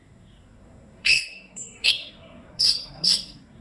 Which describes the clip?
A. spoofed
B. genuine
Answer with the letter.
A